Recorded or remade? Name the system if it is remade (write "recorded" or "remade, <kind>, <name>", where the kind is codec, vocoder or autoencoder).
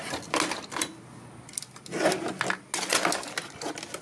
recorded